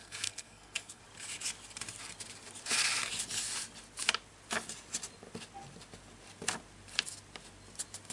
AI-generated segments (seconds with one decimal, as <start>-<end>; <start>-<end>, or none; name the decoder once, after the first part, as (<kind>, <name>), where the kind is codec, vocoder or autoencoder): 0.0-1.0 (codec, SNAC)